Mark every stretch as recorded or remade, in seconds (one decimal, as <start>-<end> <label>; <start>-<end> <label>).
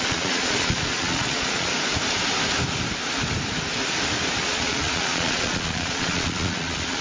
0.0-1.7 remade; 1.7-4.4 recorded; 4.4-7.0 remade